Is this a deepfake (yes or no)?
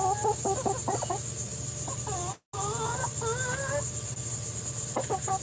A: no